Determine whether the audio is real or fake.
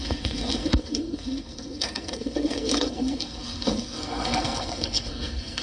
fake